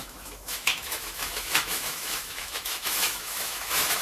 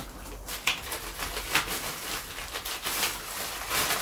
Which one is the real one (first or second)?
second